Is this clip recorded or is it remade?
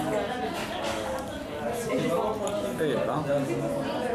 recorded